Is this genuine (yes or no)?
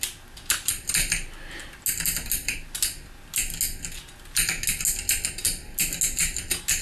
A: yes